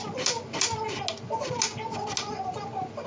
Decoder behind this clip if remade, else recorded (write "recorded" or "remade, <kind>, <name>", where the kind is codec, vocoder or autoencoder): recorded